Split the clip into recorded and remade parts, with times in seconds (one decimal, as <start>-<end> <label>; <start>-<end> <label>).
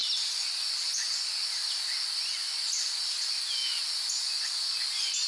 0.0-5.3 recorded